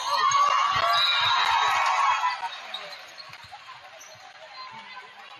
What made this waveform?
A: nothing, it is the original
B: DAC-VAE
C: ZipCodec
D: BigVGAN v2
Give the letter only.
A